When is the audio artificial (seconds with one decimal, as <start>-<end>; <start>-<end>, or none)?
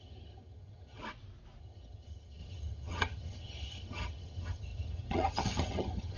0.0-1.0; 1.6-6.2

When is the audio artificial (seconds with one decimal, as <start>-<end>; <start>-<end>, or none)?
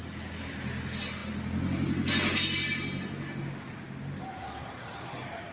none